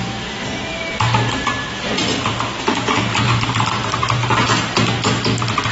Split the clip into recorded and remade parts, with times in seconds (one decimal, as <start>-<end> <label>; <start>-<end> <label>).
0.0-3.1 recorded; 3.1-4.3 remade; 4.3-5.7 recorded